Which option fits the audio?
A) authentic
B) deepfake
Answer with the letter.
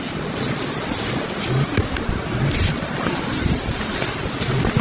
A